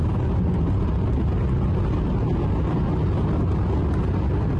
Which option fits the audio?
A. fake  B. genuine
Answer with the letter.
B